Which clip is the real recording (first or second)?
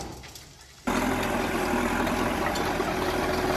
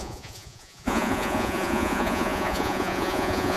first